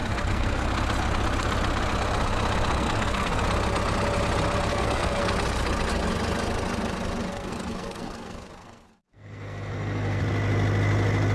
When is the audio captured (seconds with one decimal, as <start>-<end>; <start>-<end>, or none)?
0.7-2.7; 3.4-4.7; 5.3-7.3; 10.2-11.3